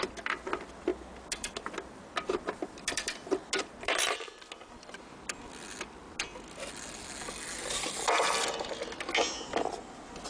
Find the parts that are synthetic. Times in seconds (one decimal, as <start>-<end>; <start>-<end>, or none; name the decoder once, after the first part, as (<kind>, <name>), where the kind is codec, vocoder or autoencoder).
none